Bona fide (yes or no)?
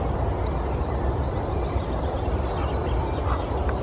yes